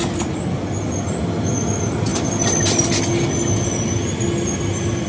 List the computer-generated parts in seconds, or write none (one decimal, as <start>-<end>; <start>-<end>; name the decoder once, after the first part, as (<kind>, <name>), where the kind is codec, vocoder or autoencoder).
none

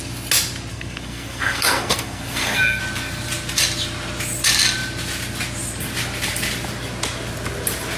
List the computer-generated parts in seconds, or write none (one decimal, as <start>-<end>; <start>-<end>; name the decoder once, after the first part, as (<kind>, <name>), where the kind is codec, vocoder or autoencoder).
0.7-2.8 (codec, SNAC)

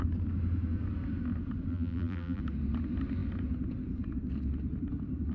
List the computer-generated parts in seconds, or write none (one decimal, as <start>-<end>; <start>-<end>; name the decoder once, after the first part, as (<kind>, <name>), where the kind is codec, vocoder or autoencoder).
1.7-2.4 (vocoder, BigVGAN v2)

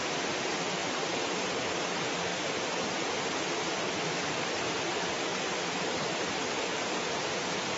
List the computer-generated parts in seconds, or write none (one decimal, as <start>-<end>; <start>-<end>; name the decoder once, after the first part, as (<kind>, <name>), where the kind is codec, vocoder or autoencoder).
none

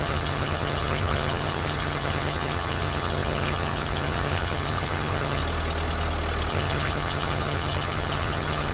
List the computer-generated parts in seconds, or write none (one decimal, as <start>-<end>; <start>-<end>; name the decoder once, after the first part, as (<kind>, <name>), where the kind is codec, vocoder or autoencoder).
0.0-5.4 (vocoder, HiFi-GAN); 6.5-8.7

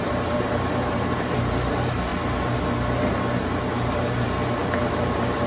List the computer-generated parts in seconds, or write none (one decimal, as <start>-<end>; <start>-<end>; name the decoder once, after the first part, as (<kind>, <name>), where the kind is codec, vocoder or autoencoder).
0.0-2.1 (vocoder, BigVGAN v2); 4.9-5.5